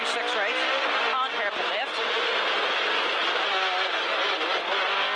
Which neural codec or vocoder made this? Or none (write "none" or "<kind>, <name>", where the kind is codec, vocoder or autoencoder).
none